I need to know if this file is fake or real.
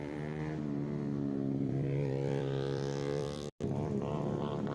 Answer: fake